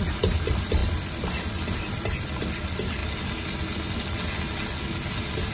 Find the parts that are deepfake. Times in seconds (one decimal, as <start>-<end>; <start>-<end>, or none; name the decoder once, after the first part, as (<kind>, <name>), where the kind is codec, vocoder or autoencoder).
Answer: 0.0-3.0 (vocoder, BigVGAN v2)